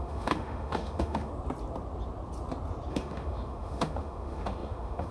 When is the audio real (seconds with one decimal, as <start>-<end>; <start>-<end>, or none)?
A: 1.3-2.9